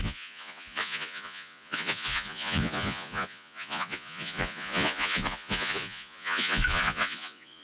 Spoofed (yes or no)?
yes